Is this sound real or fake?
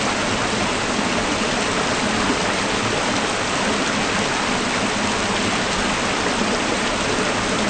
real